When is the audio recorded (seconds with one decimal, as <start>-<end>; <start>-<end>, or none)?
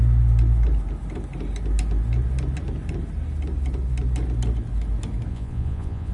0.0-5.3